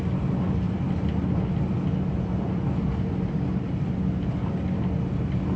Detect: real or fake real